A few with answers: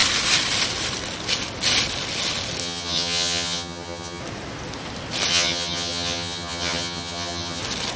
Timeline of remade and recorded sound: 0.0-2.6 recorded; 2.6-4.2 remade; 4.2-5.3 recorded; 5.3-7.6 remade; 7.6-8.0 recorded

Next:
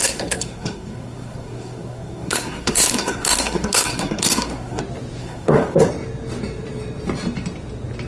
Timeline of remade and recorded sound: 0.0-4.8 remade; 4.8-5.2 recorded; 5.2-5.9 remade; 5.9-8.1 recorded

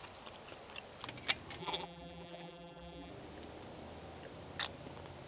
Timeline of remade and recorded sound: 0.0-1.6 recorded; 1.6-3.1 remade; 3.1-5.3 recorded

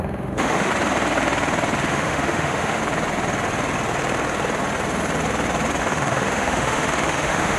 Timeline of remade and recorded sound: 0.0-0.7 remade; 0.7-1.9 recorded; 1.9-2.8 remade; 2.8-5.8 recorded; 5.8-7.6 remade

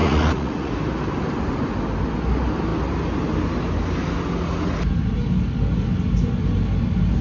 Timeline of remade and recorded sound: 0.0-0.7 remade; 0.7-7.2 recorded

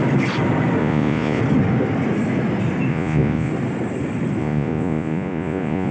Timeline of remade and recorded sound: 0.0-0.8 recorded; 0.8-1.4 remade; 1.4-2.9 recorded; 2.9-3.5 remade; 3.5-4.4 recorded; 4.4-5.9 remade